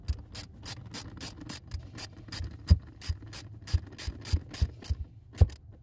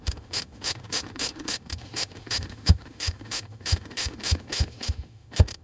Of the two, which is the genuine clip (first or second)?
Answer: first